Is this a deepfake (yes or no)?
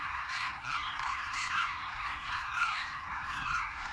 yes